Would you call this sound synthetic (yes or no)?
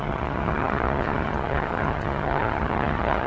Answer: yes